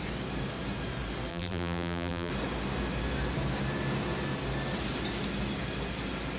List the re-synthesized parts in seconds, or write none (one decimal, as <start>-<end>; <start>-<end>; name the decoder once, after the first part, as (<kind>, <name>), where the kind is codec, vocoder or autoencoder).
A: 1.3-2.3 (vocoder, BigVGAN v2)